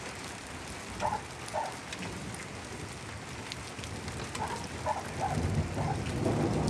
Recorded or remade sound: recorded